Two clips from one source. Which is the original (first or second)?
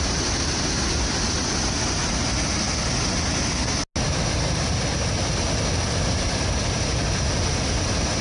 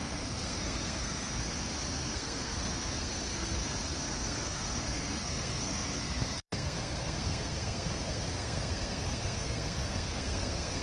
first